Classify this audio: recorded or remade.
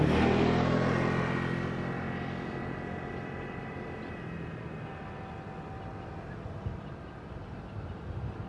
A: recorded